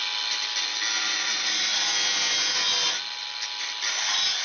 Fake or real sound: real